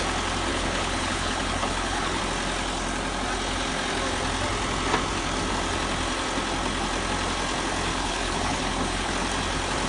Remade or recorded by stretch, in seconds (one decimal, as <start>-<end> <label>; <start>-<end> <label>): 0.0-0.5 recorded; 0.5-2.2 remade; 2.2-7.9 recorded; 7.9-9.1 remade; 9.1-9.9 recorded